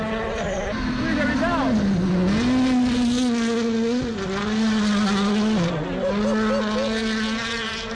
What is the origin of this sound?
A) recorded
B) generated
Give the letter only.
A